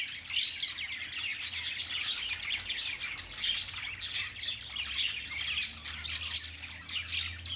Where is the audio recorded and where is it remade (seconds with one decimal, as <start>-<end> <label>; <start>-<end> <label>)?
0.0-7.6 recorded